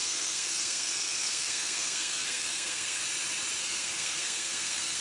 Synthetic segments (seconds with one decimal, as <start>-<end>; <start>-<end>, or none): 0.0-3.0; 3.6-5.0